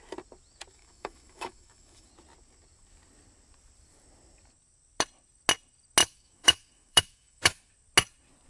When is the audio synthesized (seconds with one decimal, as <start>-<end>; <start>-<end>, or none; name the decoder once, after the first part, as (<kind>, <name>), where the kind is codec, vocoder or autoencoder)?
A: 0.7-2.1 (autoencoder, DAC-VAE); 6.0-7.7